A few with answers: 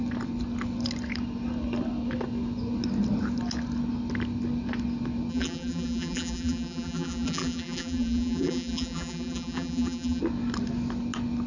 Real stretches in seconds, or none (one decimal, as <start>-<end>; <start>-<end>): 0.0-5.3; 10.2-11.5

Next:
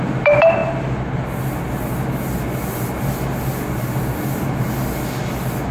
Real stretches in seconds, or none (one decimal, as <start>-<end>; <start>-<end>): 0.0-5.7

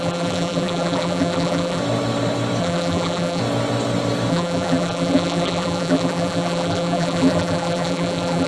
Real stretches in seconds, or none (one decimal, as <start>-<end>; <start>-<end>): 1.8-2.6; 3.4-4.3

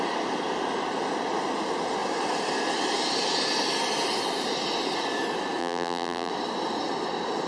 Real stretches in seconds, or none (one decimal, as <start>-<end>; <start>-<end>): 0.0-5.6; 6.3-7.5

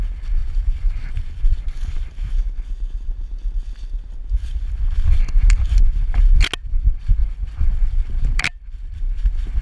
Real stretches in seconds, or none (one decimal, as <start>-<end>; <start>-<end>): 0.0-0.4; 1.4-7.2; 9.0-9.6